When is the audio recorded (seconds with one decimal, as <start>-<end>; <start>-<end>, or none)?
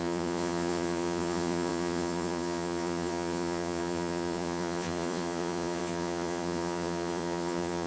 none